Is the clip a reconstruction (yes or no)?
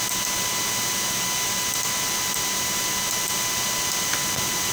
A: no